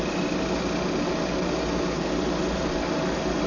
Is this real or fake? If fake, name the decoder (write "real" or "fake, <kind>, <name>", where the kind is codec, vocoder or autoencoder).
real